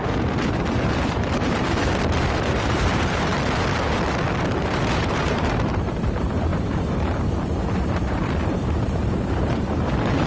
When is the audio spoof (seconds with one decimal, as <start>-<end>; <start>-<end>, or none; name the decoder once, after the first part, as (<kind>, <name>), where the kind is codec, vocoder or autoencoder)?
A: 0.0-3.3 (vocoder, BigVGAN v2); 4.6-10.3